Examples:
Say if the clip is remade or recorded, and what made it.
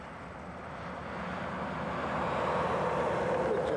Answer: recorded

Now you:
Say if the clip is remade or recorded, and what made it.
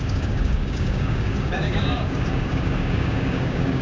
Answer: remade, codec, DAC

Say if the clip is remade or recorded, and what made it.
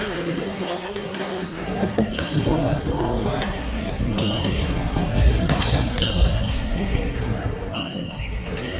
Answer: remade, codec, SNAC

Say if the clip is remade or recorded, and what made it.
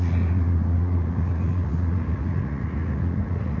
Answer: remade, vocoder, Vocos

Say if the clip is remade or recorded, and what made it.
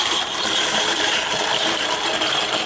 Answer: remade, vocoder, BigVGAN v2